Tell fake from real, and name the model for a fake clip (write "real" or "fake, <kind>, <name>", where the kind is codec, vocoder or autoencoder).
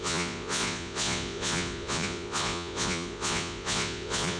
fake, vocoder, Vocos